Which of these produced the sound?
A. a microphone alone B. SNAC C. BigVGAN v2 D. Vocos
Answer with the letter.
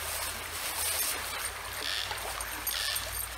A